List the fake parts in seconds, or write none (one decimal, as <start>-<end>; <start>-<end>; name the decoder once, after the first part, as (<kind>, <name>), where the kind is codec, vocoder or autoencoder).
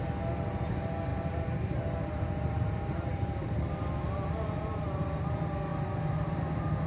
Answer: 1.1-5.2 (vocoder, BigVGAN v2); 5.7-6.9